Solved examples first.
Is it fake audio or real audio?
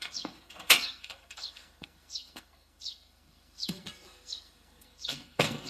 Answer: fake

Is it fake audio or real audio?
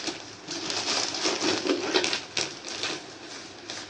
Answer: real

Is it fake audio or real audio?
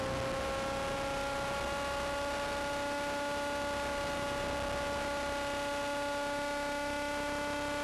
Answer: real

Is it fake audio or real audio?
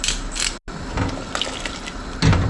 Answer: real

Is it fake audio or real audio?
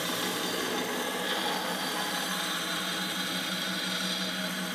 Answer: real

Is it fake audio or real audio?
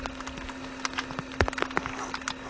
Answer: real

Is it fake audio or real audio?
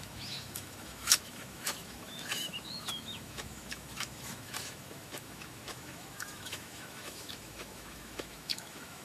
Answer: fake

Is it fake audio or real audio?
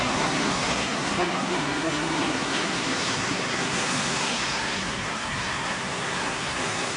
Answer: fake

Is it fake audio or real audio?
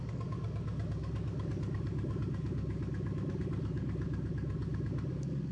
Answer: fake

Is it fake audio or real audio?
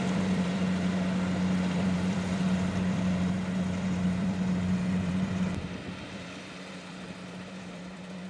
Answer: fake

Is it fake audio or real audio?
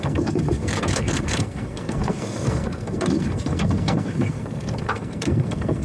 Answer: fake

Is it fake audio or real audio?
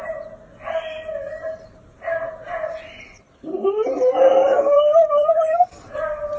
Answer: real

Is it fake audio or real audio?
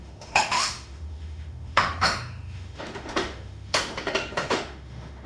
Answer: fake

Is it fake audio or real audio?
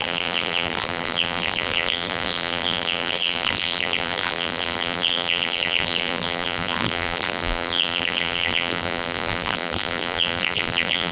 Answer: fake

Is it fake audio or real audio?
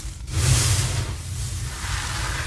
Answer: real